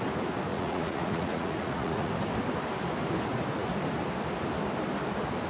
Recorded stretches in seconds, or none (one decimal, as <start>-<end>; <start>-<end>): 0.0-0.5; 2.1-5.5